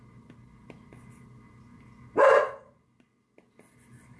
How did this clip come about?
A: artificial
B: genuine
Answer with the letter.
B